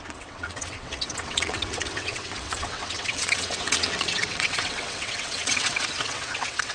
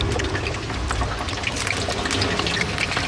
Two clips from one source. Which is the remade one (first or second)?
first